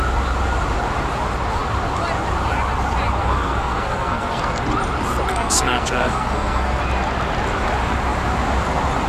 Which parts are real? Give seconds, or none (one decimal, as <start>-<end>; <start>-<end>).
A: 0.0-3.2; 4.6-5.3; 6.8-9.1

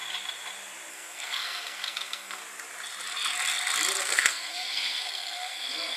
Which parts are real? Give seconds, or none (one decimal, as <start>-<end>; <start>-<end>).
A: 0.0-0.9; 2.4-4.0

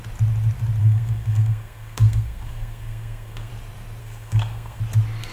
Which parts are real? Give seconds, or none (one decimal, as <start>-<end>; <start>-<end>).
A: 0.0-0.8; 3.5-4.0; 4.8-5.3